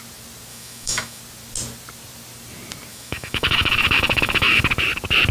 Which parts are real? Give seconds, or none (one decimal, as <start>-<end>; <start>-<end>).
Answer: 0.0-0.5; 1.2-2.9; 4.6-5.3